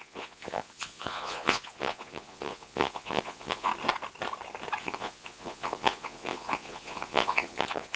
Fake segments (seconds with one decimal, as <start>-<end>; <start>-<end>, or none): 0.0-3.7; 4.8-8.0